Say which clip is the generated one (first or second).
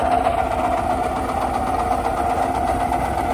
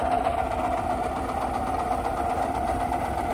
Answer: second